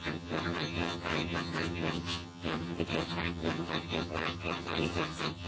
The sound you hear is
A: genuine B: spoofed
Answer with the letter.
B